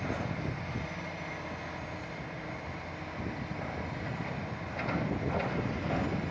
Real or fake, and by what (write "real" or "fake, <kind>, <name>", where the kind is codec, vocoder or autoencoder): real